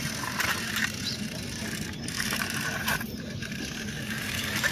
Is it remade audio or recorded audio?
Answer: remade